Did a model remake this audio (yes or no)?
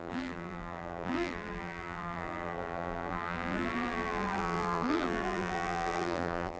yes